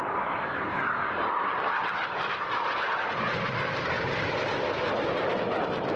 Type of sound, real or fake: real